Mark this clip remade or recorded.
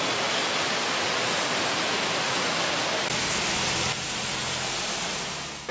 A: recorded